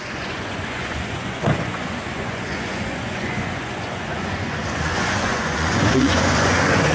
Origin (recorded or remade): remade